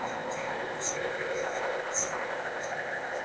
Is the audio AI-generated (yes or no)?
yes